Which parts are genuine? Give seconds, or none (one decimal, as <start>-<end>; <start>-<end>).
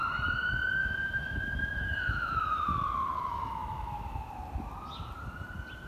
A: 0.0-0.8; 4.3-5.9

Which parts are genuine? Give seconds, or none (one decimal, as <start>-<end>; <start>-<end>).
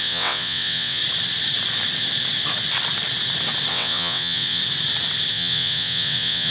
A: 1.0-3.7; 4.6-5.3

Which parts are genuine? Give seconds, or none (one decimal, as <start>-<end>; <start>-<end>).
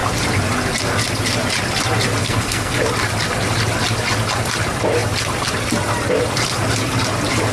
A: 0.0-2.2; 2.8-7.5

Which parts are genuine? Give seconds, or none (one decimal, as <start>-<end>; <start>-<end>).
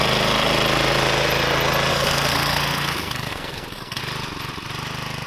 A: 0.0-1.9; 4.0-5.3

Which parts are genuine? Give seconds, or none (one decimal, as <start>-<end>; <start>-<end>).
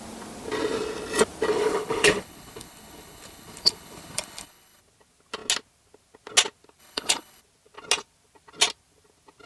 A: 0.0-1.5; 4.8-6.8; 7.4-9.5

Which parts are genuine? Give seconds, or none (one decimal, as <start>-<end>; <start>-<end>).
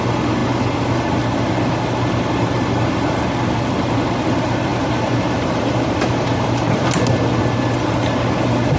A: 0.0-4.7; 6.9-8.8